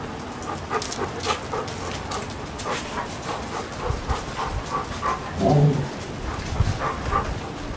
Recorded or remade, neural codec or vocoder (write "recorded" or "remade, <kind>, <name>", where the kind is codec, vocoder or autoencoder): recorded